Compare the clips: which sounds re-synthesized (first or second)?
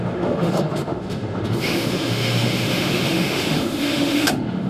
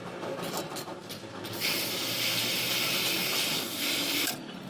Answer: first